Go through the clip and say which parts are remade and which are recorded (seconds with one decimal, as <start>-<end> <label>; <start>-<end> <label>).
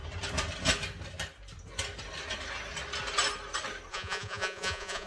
0.0-3.9 recorded; 3.9-5.1 remade